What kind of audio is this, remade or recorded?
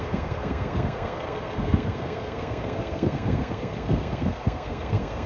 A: remade